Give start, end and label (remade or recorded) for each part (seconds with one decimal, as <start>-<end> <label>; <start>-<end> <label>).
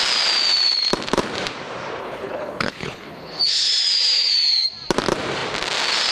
0.0-2.0 recorded; 2.0-3.4 remade; 3.4-6.1 recorded